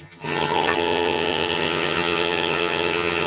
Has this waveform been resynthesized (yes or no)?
yes